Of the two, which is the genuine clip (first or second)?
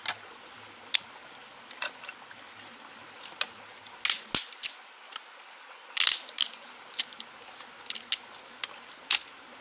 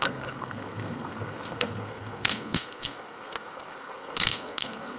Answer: first